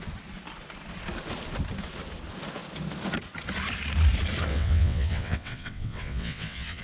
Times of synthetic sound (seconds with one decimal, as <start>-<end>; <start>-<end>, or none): 4.5-6.8